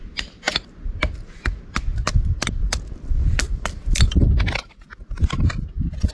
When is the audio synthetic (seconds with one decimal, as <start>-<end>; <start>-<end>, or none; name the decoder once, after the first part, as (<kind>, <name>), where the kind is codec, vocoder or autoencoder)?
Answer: none